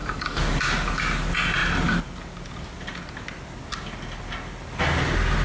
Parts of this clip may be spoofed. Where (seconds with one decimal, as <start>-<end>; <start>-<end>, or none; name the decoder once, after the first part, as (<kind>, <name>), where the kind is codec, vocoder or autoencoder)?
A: 0.0-0.6 (codec, DAC)